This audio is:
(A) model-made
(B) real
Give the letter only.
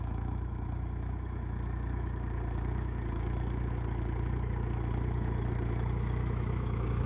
A